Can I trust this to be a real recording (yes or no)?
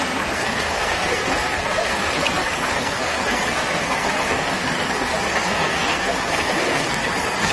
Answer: no